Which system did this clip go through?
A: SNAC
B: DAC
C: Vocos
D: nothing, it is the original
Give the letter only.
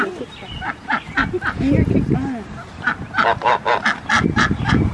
D